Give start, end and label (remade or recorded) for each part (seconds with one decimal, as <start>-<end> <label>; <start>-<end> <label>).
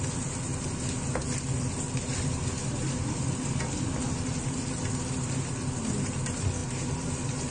0.0-7.5 recorded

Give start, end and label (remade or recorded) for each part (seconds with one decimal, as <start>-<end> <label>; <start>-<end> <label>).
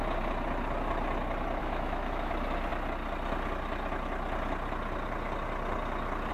0.0-1.6 recorded; 1.6-2.3 remade; 2.3-6.3 recorded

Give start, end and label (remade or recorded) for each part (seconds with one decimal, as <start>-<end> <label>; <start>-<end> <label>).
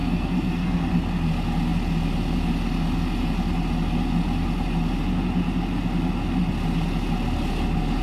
0.0-0.9 remade; 0.9-8.0 recorded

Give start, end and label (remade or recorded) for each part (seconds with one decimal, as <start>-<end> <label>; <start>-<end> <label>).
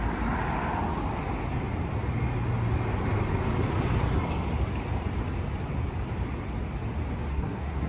0.0-7.3 recorded; 7.3-7.9 remade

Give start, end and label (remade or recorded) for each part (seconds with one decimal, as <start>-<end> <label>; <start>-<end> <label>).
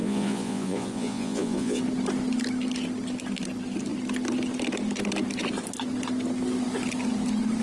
0.0-1.8 remade; 1.8-7.6 recorded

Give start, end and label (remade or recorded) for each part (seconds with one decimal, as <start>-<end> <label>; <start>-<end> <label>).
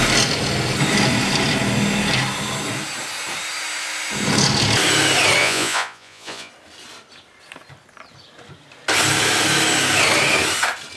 0.0-5.4 recorded; 5.4-6.5 remade; 6.5-11.0 recorded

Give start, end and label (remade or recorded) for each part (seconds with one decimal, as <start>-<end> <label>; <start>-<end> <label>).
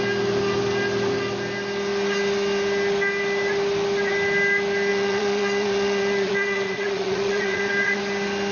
0.0-4.9 recorded; 4.9-8.0 remade; 8.0-8.5 recorded